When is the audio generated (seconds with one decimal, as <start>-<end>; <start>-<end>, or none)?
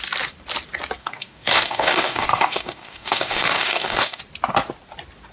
1.0-4.2